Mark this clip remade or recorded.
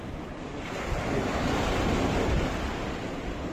recorded